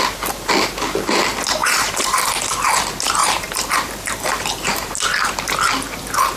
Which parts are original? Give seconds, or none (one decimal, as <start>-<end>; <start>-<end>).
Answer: 0.0-1.6; 2.2-3.2; 4.9-6.4